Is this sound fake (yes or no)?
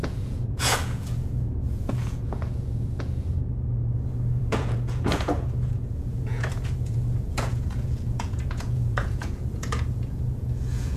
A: yes